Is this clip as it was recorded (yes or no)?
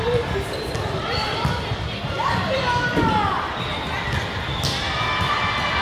yes